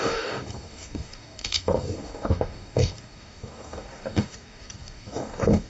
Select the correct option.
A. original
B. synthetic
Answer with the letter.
B